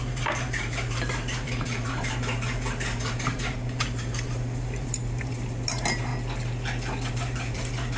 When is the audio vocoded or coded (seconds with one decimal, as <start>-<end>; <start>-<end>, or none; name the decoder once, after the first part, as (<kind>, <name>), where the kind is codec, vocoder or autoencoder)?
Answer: 0.0-6.1 (vocoder, BigVGAN v2); 7.1-8.0